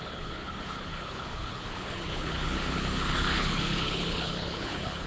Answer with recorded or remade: remade